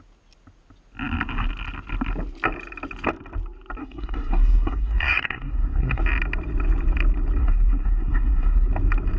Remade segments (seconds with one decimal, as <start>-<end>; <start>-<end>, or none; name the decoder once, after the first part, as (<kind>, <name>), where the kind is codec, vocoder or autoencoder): 3.8-6.0 (codec, SNAC); 7.4-8.7